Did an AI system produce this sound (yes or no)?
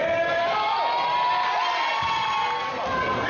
no